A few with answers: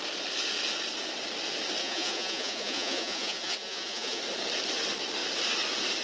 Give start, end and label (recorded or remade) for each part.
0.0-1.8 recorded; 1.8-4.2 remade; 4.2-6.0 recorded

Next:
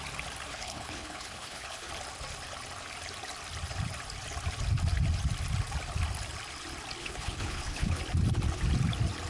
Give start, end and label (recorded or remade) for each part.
0.0-0.5 recorded; 0.5-1.9 remade; 1.9-7.0 recorded; 7.0-8.0 remade; 8.0-9.3 recorded

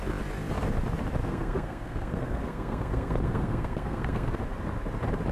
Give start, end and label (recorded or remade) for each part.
0.0-1.2 recorded; 1.2-4.4 remade; 4.4-5.3 recorded